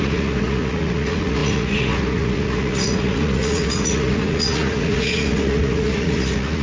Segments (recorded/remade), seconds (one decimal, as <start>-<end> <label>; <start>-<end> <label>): 0.0-6.6 remade

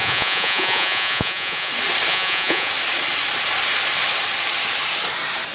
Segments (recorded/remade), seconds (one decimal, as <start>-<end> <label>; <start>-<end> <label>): 0.0-1.7 remade; 1.7-2.1 recorded; 2.1-2.7 remade; 2.7-5.5 recorded